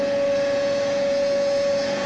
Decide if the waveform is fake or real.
fake